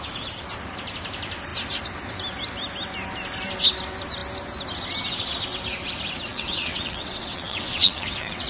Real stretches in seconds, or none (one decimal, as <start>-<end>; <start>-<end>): 0.0-6.3